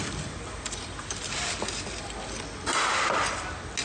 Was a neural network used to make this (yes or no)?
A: no